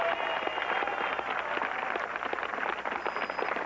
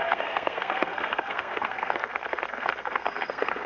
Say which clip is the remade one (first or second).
second